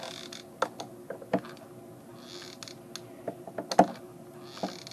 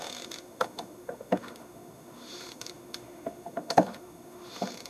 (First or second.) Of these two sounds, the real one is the first